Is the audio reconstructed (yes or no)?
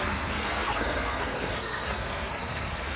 yes